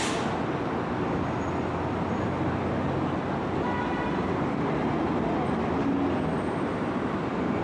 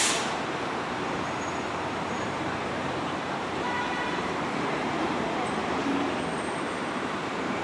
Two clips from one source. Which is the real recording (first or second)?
first